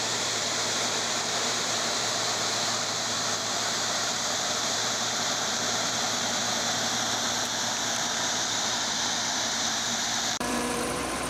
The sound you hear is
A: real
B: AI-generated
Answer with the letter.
B